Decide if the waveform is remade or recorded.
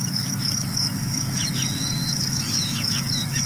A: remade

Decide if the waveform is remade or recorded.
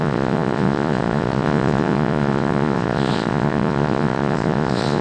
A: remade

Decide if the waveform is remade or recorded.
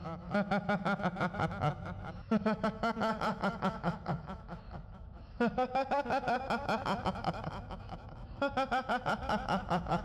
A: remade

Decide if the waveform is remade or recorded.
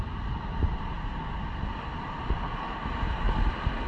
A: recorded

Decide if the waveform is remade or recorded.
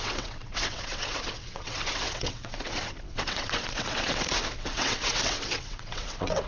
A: remade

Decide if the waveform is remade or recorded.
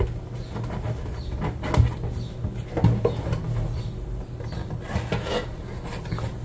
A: recorded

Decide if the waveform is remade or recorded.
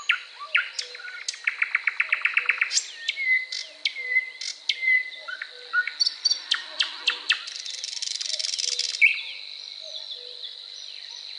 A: recorded